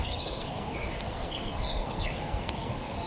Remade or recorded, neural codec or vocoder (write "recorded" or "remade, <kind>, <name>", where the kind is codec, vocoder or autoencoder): remade, codec, SNAC